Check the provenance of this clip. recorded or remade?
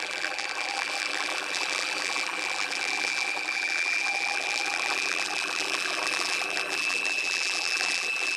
remade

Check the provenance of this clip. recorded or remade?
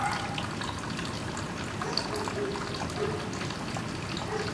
recorded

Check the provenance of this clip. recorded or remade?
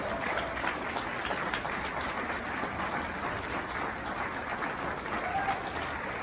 recorded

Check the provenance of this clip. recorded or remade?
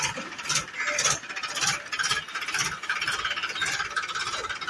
recorded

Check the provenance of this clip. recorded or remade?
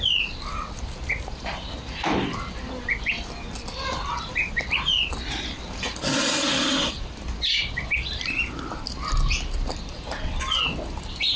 recorded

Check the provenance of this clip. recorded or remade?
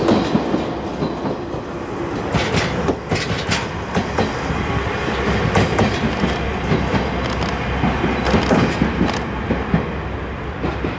recorded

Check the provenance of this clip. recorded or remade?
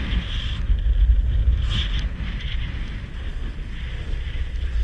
recorded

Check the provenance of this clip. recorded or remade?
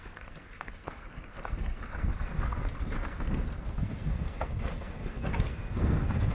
remade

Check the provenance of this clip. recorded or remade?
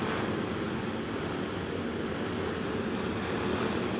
recorded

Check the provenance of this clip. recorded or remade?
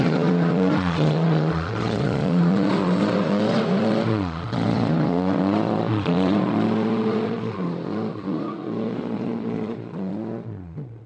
remade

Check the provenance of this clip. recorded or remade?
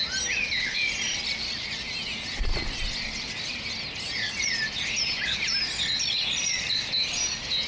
recorded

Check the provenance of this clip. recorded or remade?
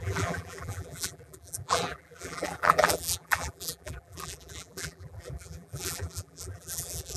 remade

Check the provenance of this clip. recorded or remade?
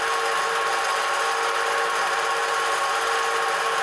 recorded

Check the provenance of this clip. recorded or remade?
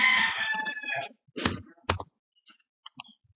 recorded